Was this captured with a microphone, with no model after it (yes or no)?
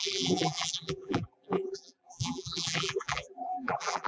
no